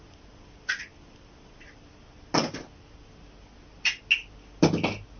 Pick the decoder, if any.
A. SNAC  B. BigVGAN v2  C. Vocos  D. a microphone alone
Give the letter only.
D